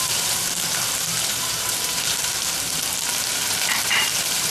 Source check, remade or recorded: remade